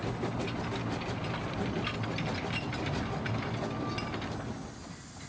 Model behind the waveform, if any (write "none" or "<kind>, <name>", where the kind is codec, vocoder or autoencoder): none